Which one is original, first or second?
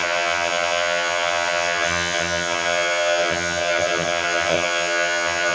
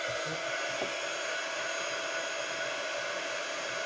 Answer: second